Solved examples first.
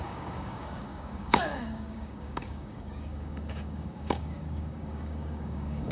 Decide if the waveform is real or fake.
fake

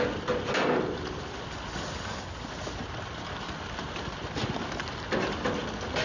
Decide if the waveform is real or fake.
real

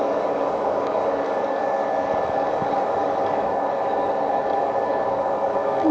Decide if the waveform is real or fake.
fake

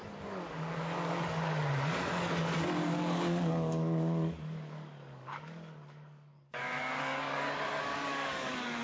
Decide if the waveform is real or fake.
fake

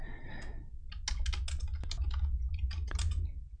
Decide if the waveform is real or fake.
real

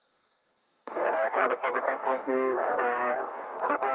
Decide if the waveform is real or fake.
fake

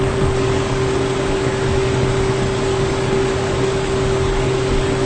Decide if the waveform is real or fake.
fake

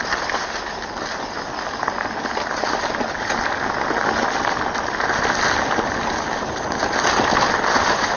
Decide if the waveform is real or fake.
real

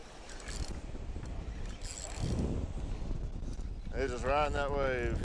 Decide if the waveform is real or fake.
real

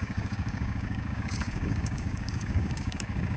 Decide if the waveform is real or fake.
fake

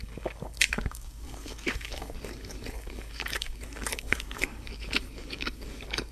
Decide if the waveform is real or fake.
fake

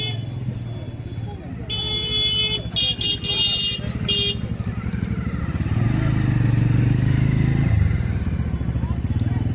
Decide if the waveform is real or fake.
real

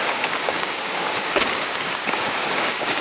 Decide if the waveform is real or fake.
fake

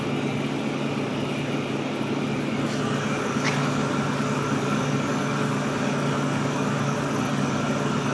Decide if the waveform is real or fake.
fake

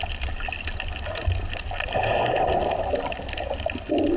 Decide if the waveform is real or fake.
real